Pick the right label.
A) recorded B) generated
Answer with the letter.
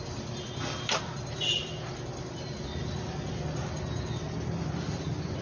A